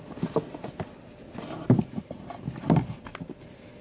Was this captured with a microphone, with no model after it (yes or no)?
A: yes